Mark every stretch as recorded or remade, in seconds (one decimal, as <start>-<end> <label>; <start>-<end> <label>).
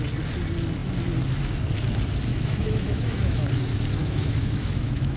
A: 0.0-2.3 recorded; 2.3-3.5 remade; 3.5-4.0 recorded; 4.0-5.2 remade